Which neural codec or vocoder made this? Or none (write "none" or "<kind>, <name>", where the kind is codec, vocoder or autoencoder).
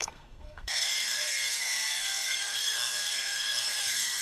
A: codec, SNAC